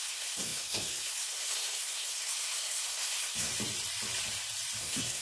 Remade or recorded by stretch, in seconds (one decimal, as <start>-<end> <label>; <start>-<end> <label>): 0.0-3.5 remade; 3.5-4.8 recorded; 4.8-5.2 remade